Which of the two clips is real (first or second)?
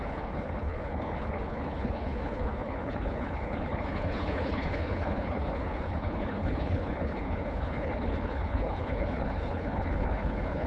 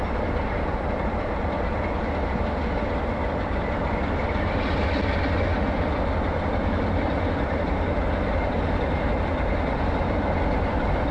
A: second